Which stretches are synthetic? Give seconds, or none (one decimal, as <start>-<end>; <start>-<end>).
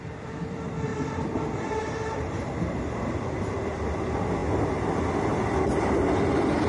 0.9-3.1